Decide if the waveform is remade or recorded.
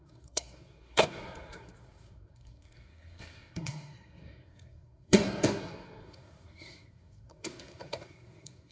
remade